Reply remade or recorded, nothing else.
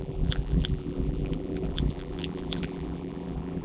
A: remade